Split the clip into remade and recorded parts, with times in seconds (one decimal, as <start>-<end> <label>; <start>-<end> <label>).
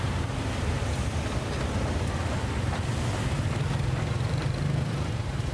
0.0-0.8 remade; 0.8-4.1 recorded; 4.1-5.5 remade